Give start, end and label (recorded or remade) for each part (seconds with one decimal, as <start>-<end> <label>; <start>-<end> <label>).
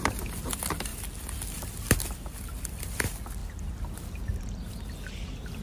0.0-5.6 recorded